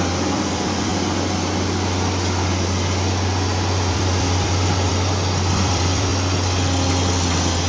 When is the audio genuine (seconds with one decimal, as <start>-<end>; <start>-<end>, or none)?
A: 0.9-3.9; 4.9-5.5; 6.1-7.7

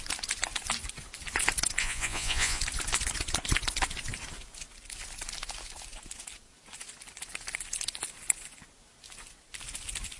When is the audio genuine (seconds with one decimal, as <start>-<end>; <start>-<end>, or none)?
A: 0.0-1.8; 2.6-10.2

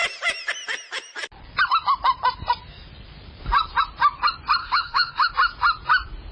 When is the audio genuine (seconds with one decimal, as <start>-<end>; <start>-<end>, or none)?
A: 0.0-4.6; 5.3-6.3

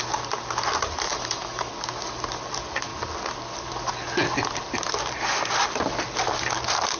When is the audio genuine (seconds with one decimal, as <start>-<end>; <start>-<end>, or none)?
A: 0.0-1.1; 1.7-7.0

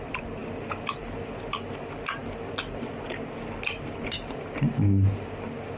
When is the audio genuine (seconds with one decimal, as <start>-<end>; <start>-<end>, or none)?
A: 0.0-0.4; 1.0-5.8